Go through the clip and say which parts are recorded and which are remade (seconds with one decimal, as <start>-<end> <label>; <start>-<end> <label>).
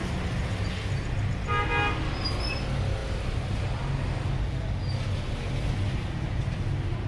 0.0-7.1 recorded